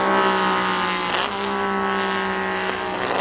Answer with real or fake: real